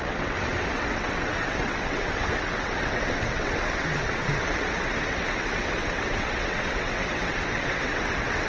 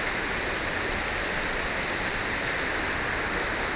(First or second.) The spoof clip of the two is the first